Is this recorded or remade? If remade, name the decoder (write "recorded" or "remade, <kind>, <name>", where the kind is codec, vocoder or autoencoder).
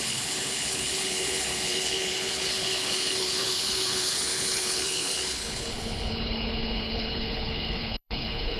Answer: remade, codec, HILCodec